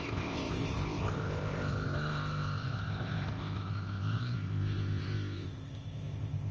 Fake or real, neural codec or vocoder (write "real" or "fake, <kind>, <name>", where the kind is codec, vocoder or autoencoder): fake, codec, ZipCodec